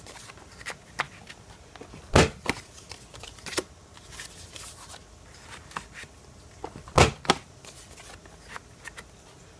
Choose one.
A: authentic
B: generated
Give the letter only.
A